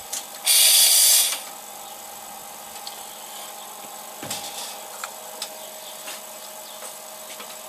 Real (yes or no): yes